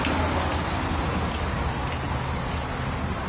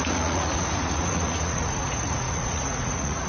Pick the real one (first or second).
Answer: first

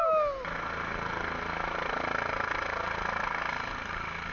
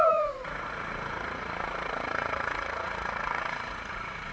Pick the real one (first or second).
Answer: first